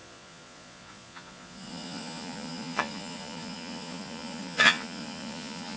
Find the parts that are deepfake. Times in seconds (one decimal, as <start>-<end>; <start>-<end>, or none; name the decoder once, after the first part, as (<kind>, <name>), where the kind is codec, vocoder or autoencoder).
0.0-5.8 (vocoder, Vocos)